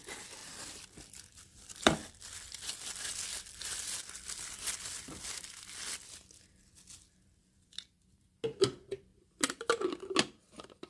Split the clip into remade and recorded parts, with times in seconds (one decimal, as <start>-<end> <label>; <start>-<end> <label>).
0.0-0.4 recorded; 0.4-5.5 remade; 5.5-10.9 recorded